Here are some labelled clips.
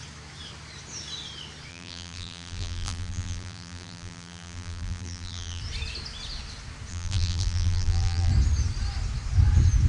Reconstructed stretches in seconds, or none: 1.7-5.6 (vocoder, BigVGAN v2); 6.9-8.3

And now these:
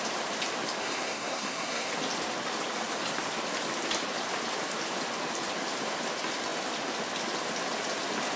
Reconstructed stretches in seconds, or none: 0.8-1.9 (codec, SNAC)

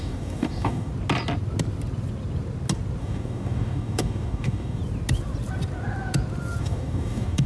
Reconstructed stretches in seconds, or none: 0.0-0.9 (codec, DAC); 3.0-4.8; 6.6-7.5

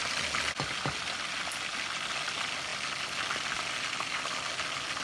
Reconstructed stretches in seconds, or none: none